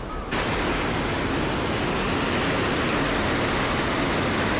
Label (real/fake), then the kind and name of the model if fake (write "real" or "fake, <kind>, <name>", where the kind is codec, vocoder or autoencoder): real